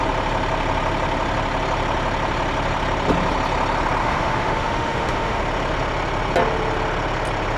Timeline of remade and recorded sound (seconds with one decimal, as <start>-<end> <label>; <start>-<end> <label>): 0.0-4.0 recorded; 4.0-5.4 remade; 5.4-7.6 recorded